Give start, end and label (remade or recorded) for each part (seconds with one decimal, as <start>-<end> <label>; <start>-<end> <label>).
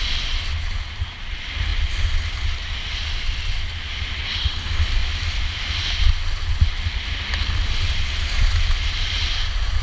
0.0-9.8 recorded